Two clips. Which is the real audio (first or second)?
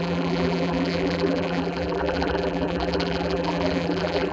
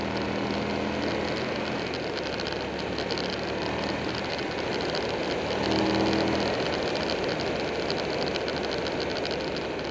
second